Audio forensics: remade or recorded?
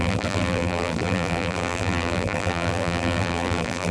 remade